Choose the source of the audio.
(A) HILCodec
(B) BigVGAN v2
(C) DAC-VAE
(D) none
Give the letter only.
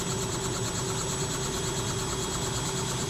D